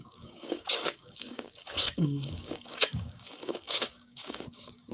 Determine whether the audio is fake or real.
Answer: fake